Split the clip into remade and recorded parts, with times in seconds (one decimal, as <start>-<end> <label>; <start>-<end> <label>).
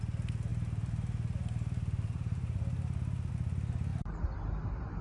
0.0-0.5 recorded; 0.5-3.3 remade; 3.3-3.9 recorded; 3.9-5.0 remade